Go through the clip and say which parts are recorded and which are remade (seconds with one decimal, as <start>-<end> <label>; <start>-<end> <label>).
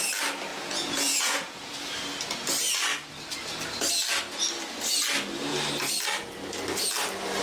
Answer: 0.0-0.5 recorded; 0.5-1.7 remade; 1.7-7.4 recorded